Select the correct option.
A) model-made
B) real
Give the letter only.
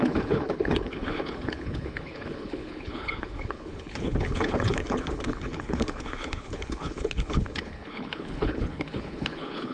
A